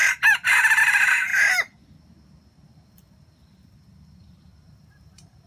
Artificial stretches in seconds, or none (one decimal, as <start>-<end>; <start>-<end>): 0.8-5.5